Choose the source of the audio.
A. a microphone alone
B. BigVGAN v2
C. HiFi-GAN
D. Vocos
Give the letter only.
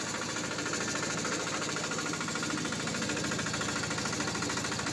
A